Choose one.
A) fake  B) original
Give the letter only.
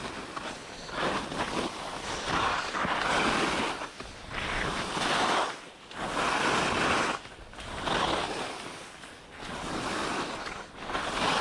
B